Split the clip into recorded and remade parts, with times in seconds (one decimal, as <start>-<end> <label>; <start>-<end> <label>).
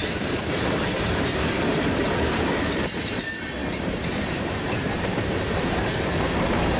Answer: 0.0-2.6 remade; 2.6-3.6 recorded; 3.6-6.0 remade; 6.0-6.8 recorded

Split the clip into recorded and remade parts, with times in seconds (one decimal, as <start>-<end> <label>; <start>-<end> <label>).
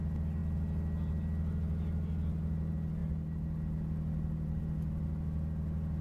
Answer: 0.0-6.0 recorded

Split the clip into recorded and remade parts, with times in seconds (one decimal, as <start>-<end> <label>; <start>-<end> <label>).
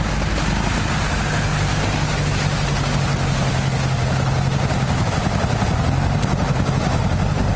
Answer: 0.0-7.6 recorded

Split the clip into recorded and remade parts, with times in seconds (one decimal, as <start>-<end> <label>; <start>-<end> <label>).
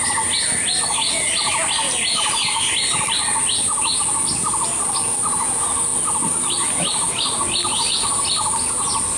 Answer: 0.0-9.2 recorded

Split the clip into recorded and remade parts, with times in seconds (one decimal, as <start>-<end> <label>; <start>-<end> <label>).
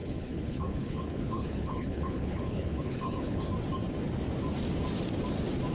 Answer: 0.0-3.4 remade; 3.4-5.7 recorded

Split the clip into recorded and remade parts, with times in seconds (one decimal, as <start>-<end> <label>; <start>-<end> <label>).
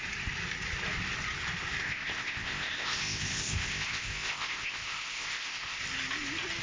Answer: 0.0-1.8 recorded; 1.8-5.8 remade; 5.8-6.6 recorded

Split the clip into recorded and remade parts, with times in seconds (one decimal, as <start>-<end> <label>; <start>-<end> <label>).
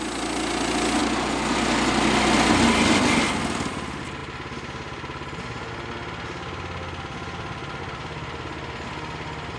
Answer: 0.0-9.6 recorded